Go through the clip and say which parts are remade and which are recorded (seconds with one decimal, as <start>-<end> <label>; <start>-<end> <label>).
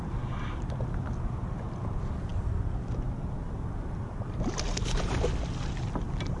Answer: 0.0-6.4 recorded